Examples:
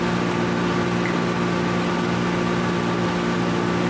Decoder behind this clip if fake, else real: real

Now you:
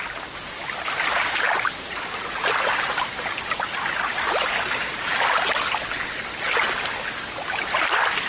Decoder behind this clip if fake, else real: real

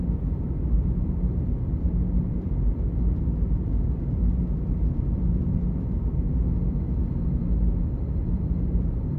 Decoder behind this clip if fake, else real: fake, vocoder, BigVGAN v2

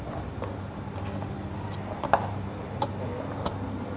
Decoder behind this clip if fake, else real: real